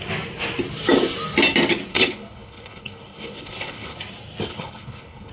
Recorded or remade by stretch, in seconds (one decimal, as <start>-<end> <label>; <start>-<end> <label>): 0.0-1.9 recorded; 1.9-4.0 remade; 4.0-4.5 recorded; 4.5-5.3 remade